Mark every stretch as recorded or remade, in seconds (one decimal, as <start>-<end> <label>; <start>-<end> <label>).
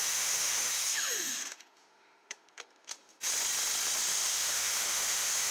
0.0-3.3 remade; 3.3-4.1 recorded; 4.1-5.5 remade